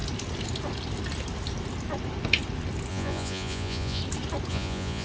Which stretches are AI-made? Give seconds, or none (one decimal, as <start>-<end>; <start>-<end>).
2.9-4.0; 4.5-5.0